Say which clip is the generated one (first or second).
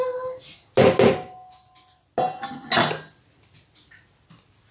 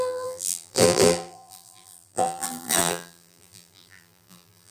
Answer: second